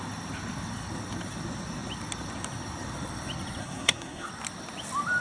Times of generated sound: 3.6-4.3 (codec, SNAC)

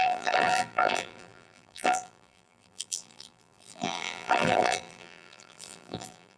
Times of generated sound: 0.0-6.4 (vocoder, BigVGAN v2)